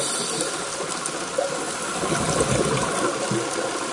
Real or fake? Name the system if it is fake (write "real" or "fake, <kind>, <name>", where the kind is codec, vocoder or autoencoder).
real